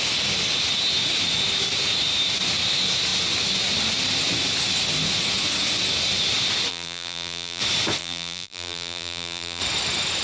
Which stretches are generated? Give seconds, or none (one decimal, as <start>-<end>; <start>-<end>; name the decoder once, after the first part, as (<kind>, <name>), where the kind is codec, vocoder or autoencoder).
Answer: 6.7-7.6 (vocoder, BigVGAN v2); 8.0-9.6